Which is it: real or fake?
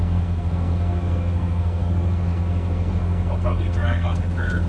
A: fake